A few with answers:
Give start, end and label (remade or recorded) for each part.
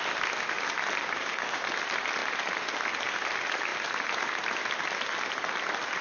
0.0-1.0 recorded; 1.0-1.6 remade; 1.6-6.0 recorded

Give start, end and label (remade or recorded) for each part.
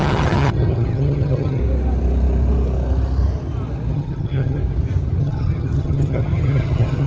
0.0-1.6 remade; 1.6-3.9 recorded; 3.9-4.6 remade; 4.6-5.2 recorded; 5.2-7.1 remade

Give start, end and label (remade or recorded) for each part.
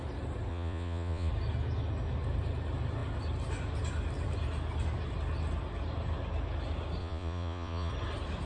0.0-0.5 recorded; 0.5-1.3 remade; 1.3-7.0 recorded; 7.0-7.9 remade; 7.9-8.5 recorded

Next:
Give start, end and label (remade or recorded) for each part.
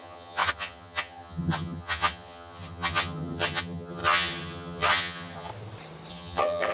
0.0-5.5 remade; 5.5-6.1 recorded; 6.1-6.7 remade